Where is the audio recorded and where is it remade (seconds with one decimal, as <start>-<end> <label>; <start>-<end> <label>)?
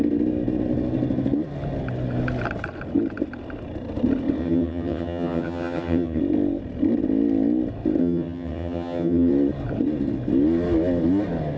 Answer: 0.0-4.4 recorded; 4.4-6.2 remade; 6.2-8.0 recorded; 8.0-9.3 remade; 9.3-11.6 recorded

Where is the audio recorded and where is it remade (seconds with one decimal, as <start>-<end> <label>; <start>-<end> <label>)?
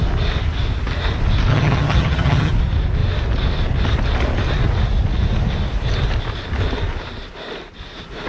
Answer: 0.0-1.5 recorded; 1.5-2.5 remade; 2.5-8.3 recorded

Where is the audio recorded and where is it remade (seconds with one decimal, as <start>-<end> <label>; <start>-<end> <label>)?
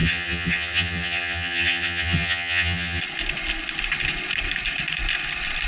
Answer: 0.0-3.0 remade; 3.0-5.7 recorded